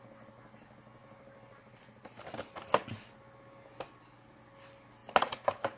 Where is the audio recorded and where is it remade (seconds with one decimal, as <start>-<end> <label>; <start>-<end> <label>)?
0.0-5.8 recorded